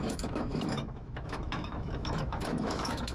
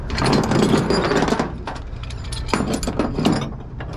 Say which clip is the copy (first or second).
first